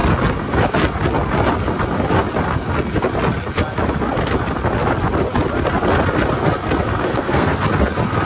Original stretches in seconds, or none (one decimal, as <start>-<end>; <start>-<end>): 0.0-7.0; 7.6-8.2